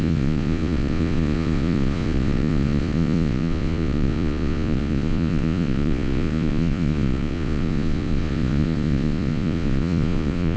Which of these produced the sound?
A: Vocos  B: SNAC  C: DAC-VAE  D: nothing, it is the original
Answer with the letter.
A